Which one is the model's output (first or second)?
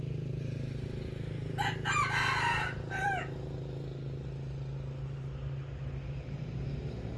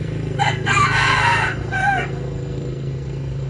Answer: second